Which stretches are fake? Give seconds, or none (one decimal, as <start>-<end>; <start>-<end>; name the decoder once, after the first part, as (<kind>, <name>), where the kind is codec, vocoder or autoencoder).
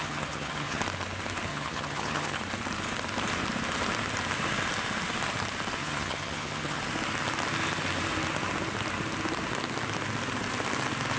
0.0-0.8 (vocoder, HiFi-GAN); 1.5-2.4; 5.8-6.8